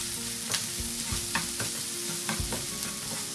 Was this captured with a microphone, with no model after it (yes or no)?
yes